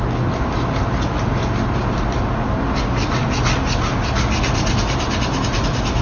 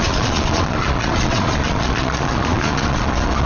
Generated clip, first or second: second